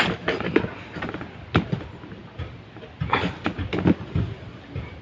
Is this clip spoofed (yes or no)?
no